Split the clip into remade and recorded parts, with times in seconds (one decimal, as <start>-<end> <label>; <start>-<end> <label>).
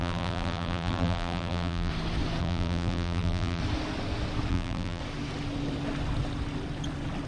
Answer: 0.0-1.9 remade; 1.9-2.4 recorded; 2.4-3.6 remade; 3.6-4.5 recorded; 4.5-5.0 remade; 5.0-7.3 recorded